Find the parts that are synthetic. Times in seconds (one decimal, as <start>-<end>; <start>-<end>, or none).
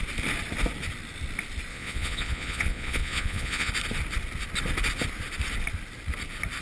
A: 1.7-3.7